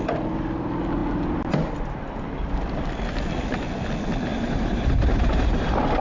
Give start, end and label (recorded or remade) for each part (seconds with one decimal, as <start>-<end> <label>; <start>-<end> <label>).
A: 0.0-4.3 recorded; 4.3-6.0 remade